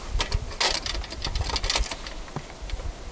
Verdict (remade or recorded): recorded